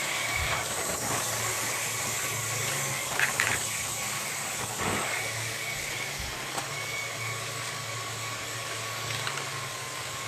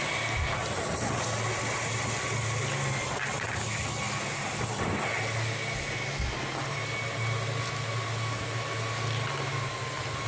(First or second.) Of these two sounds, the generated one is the first